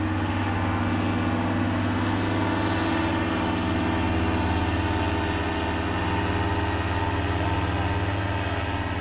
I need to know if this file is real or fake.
real